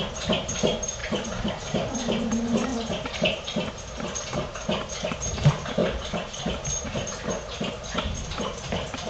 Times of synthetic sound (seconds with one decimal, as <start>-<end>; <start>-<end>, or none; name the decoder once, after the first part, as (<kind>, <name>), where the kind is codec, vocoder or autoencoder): 0.0-2.7 (vocoder, BigVGAN v2); 5.3-5.8; 6.4-9.1